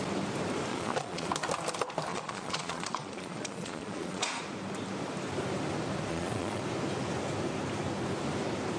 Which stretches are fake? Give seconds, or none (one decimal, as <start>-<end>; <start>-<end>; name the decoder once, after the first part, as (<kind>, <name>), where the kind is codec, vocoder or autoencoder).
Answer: 0.7-1.3 (vocoder, Vocos); 2.1-4.4; 6.1-6.6

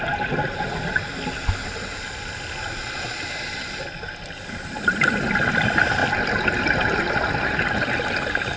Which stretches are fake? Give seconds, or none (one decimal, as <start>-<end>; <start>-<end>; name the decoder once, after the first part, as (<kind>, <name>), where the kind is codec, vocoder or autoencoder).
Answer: none

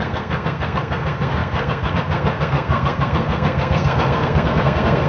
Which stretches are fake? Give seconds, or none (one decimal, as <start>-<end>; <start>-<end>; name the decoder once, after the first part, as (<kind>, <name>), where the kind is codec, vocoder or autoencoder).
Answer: 0.0-5.1 (codec, SNAC)

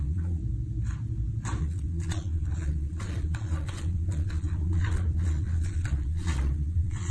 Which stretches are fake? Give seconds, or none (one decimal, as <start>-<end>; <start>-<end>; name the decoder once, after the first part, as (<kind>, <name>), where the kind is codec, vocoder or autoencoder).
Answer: 0.0-0.4 (vocoder, Vocos); 1.6-7.1

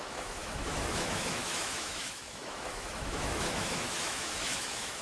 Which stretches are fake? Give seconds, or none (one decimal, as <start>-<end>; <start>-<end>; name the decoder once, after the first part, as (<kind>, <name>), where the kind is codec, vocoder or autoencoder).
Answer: 0.0-5.0 (autoencoder, DAC-VAE)